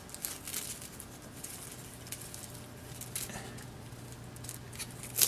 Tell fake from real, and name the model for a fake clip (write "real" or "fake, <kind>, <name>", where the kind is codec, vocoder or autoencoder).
real